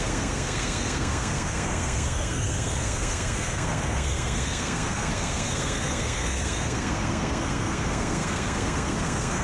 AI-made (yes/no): yes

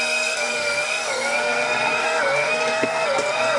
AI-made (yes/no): yes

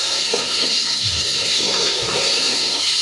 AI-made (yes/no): yes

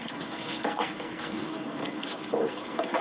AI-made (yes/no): yes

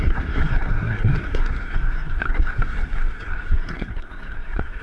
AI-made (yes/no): yes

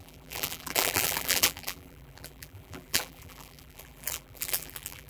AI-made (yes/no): yes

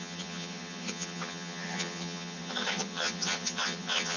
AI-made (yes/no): yes